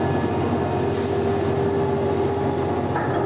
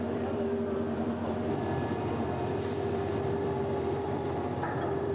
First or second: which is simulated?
second